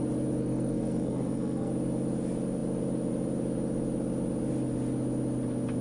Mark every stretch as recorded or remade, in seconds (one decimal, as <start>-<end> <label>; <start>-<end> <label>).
0.0-0.4 recorded; 0.4-1.7 remade; 1.7-5.8 recorded